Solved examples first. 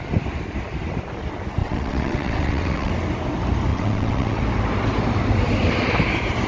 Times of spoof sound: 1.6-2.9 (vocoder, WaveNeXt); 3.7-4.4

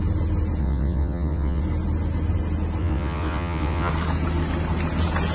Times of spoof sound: 0.6-1.6 (vocoder, WaveNeXt); 2.8-3.9

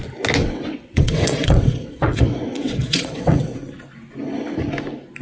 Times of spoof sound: 0.4-3.5 (vocoder, WaveNeXt)

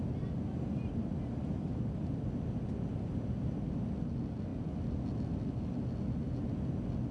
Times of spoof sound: none

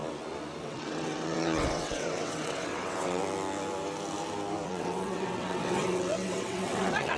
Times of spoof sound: 0.6-3.2 (vocoder, WaveNeXt); 4.7-7.2